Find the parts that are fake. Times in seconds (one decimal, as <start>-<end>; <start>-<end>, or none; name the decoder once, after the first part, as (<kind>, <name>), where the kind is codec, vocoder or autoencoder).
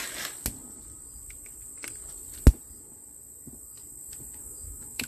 4.4-5.1 (autoencoder, DAC-VAE)